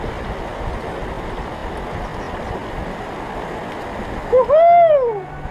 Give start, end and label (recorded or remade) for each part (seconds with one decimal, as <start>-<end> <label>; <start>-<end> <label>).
0.0-5.5 recorded